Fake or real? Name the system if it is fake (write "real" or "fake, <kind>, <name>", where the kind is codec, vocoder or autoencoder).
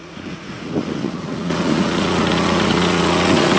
fake, vocoder, Vocos